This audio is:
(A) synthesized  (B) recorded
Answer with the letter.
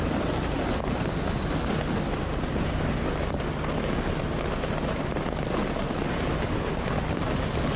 B